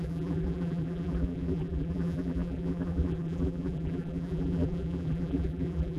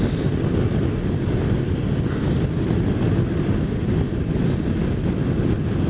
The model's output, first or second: first